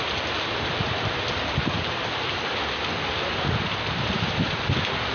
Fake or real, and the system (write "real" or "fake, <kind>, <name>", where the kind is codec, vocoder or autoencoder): real